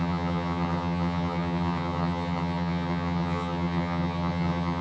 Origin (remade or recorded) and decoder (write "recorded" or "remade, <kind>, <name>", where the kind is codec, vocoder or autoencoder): remade, vocoder, HiFi-GAN